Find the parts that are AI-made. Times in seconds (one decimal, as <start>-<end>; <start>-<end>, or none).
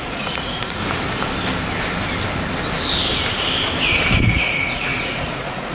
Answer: 0.0-0.8; 4.2-5.7